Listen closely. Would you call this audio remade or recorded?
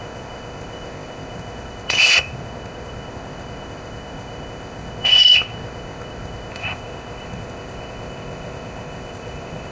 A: remade